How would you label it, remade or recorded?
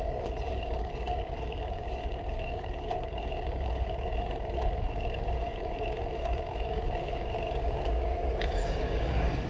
remade